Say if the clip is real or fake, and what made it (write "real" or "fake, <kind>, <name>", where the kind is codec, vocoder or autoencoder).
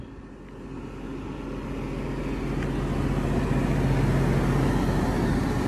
real